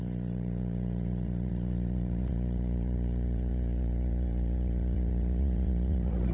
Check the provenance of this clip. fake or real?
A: fake